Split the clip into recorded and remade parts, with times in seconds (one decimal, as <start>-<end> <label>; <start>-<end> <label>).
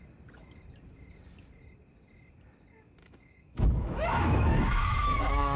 0.0-3.0 recorded; 3.0-5.6 remade